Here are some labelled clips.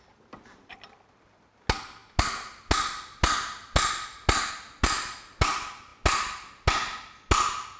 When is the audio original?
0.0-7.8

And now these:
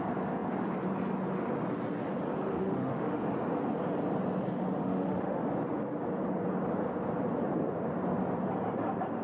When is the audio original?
0.0-2.5; 3.2-4.8; 5.4-9.2

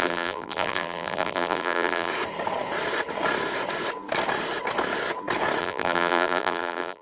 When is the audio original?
2.1-5.6

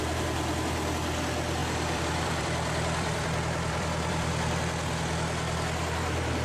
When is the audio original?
0.0-1.6; 4.6-6.4

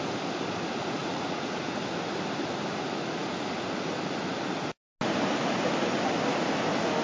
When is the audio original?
0.0-1.0; 1.8-7.0

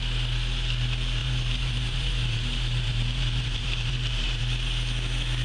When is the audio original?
0.0-1.2; 4.4-5.4

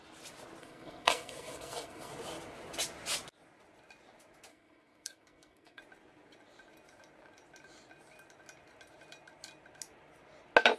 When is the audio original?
0.0-0.6; 2.1-4.5; 5.8-10.8

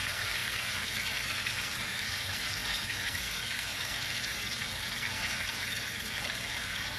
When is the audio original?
none